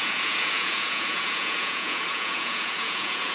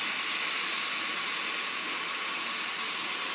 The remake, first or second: first